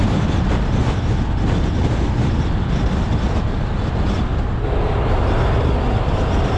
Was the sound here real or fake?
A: real